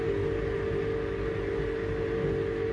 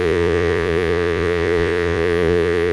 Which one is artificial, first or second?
second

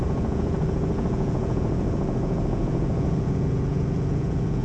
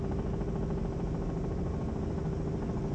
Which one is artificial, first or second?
first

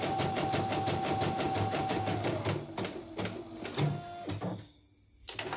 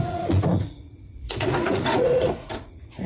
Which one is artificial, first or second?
second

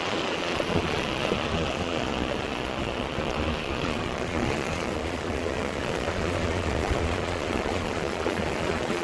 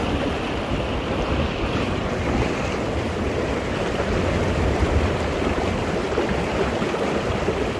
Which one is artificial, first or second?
first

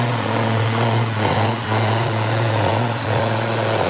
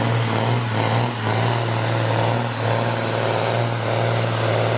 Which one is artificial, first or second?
first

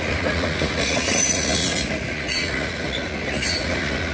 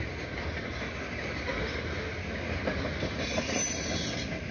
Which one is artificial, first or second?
first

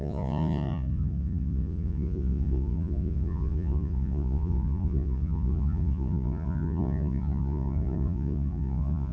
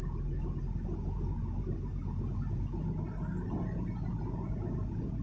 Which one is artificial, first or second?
first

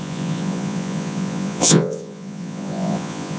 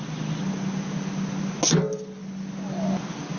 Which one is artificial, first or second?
first